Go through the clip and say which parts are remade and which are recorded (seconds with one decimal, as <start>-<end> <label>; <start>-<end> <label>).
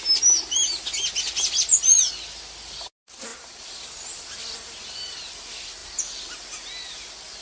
0.0-7.4 recorded